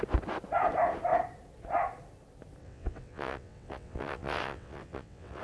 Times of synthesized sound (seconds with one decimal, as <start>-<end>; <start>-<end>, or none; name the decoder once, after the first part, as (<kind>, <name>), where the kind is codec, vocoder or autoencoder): 2.6-5.4 (vocoder, WaveNeXt)